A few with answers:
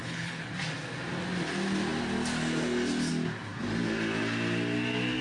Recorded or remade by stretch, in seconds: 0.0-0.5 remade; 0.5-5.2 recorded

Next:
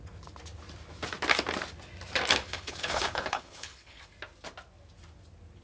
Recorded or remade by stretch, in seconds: 0.0-2.4 recorded; 2.4-4.0 remade; 4.0-5.6 recorded

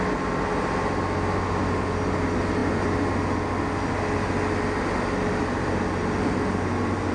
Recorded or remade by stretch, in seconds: 0.0-7.1 recorded

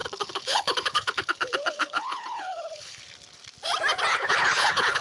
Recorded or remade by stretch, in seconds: 0.0-3.0 remade; 3.0-4.1 recorded; 4.1-5.0 remade

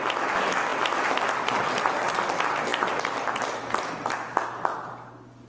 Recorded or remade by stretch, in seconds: 0.0-5.5 recorded

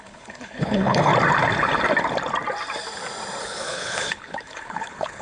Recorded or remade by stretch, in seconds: 0.0-1.1 remade; 1.1-3.4 recorded; 3.4-5.2 remade